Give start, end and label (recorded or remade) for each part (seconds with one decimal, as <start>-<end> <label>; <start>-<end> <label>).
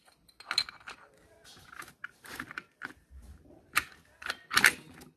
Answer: 0.0-2.0 recorded; 2.0-4.0 remade; 4.0-5.2 recorded